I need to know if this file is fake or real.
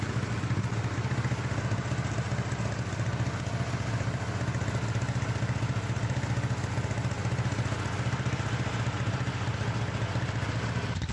real